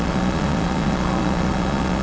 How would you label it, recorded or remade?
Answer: remade